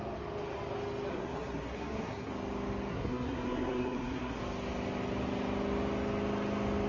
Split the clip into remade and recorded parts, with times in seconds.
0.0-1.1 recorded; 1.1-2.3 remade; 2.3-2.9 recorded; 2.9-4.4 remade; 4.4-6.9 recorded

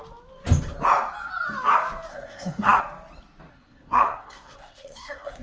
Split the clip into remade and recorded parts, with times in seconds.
0.0-2.1 recorded; 2.1-2.8 remade; 2.8-3.5 recorded; 3.5-5.4 remade

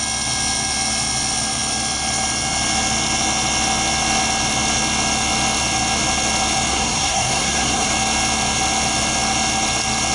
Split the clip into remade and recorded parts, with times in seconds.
0.0-6.7 recorded; 6.7-7.9 remade; 7.9-10.1 recorded

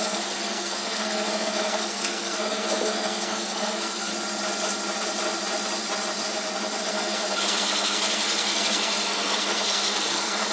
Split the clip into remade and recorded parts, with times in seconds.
0.0-4.1 remade; 4.1-6.9 recorded; 6.9-10.5 remade

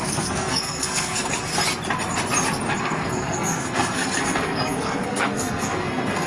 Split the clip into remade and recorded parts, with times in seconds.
0.0-1.5 remade; 1.5-2.8 recorded; 2.8-6.3 remade

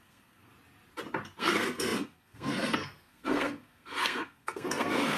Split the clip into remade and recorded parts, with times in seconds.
0.0-0.5 remade; 0.5-1.4 recorded; 1.4-5.2 remade

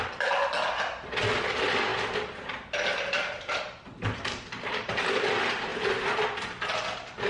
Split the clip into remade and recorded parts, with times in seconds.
0.0-7.3 recorded

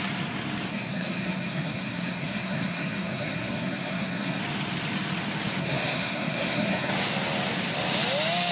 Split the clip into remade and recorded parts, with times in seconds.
0.0-0.7 recorded; 0.7-4.4 remade; 4.4-5.6 recorded; 5.6-6.9 remade; 6.9-8.5 recorded